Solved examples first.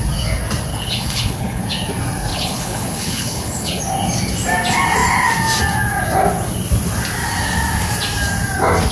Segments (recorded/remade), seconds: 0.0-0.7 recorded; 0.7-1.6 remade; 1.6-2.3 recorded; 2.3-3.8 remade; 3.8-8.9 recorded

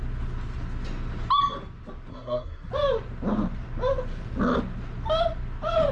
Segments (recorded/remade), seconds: 0.0-2.1 recorded; 2.1-2.7 remade; 2.7-5.9 recorded

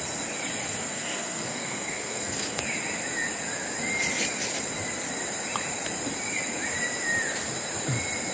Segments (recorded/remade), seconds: 0.0-0.6 recorded; 0.6-2.6 remade; 2.6-8.3 recorded

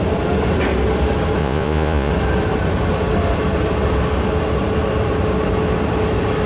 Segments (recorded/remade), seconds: 0.0-1.4 recorded; 1.4-2.1 remade; 2.1-6.5 recorded